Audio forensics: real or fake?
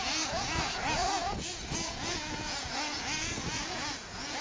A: fake